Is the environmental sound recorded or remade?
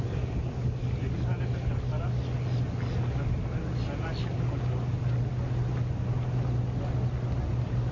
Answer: recorded